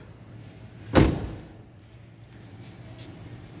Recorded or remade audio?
recorded